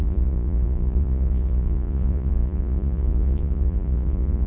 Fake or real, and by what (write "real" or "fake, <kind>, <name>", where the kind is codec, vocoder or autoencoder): fake, vocoder, Vocos